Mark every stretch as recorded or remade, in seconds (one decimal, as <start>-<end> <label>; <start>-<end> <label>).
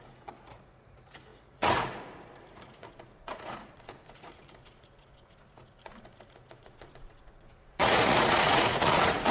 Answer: 0.0-9.3 remade